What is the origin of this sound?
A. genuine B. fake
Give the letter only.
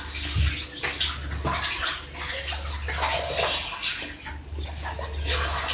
A